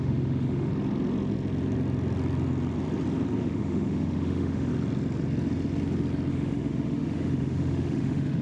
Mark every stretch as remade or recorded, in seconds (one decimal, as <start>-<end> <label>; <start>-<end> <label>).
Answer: 0.0-0.7 remade; 0.7-3.4 recorded; 3.4-4.7 remade; 4.7-6.3 recorded; 6.3-8.4 remade